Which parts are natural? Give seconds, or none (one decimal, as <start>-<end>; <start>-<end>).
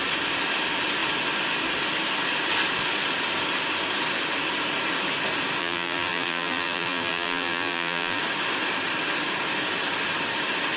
0.0-5.6; 8.2-10.8